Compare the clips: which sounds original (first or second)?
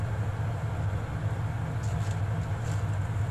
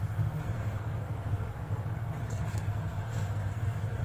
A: first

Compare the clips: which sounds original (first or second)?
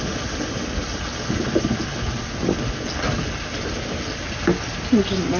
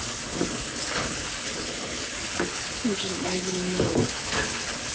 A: first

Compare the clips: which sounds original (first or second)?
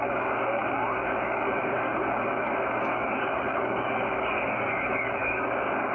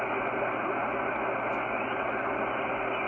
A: second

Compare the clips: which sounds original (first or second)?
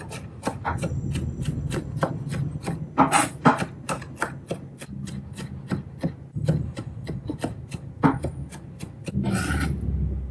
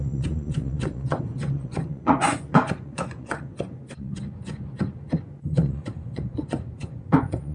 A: first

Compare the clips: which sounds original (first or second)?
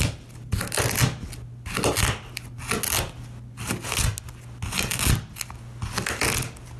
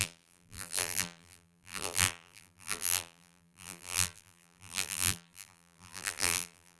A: first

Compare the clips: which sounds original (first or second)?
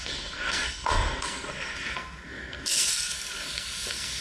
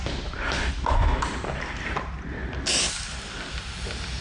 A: second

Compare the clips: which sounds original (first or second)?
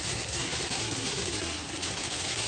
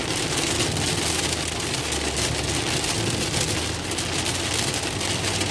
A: second